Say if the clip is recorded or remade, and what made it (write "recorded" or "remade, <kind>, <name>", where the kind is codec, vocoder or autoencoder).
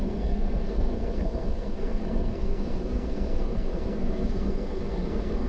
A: remade, codec, SNAC